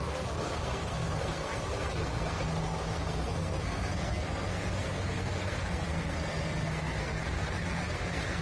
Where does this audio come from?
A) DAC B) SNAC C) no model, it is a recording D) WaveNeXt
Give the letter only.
B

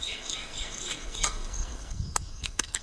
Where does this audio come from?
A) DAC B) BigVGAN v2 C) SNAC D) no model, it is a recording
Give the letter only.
C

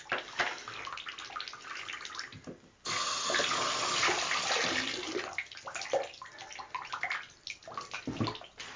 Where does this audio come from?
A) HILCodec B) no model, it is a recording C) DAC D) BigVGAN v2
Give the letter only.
B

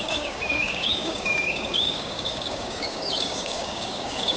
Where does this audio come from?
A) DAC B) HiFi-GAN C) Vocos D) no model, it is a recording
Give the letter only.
A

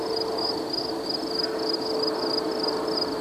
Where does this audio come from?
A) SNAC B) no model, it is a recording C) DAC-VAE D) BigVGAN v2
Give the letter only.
B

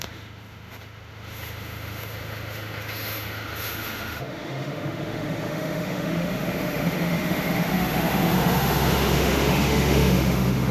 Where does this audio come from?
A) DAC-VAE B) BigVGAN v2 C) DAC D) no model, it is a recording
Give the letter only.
A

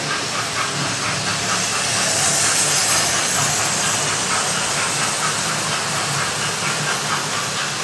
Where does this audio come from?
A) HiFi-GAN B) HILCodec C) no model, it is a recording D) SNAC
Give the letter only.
C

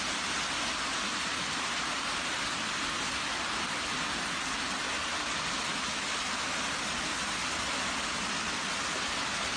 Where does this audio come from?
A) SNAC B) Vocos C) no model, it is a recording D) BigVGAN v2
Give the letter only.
C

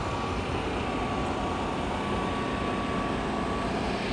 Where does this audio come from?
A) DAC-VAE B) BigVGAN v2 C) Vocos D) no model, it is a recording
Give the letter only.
D